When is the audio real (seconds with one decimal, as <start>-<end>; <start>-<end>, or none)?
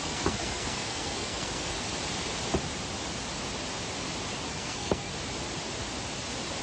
1.9-4.5; 5.1-6.6